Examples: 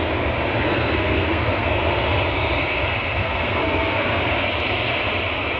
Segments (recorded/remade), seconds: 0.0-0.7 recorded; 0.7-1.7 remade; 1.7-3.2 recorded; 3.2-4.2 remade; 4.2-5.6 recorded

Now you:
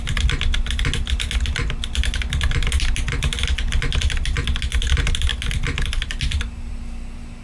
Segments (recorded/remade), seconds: 0.0-7.4 recorded

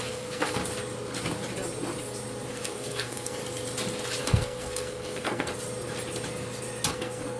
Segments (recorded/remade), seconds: 0.0-0.6 remade; 0.6-2.5 recorded; 2.5-3.4 remade; 3.4-4.2 recorded; 4.2-5.5 remade; 5.5-6.9 recorded; 6.9-7.4 remade